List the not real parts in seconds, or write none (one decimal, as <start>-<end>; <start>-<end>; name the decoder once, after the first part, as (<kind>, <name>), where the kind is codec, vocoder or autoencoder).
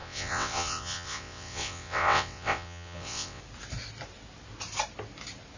0.0-3.4 (vocoder, WaveNeXt)